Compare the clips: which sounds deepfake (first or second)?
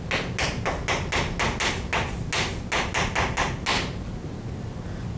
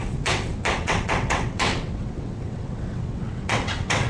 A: second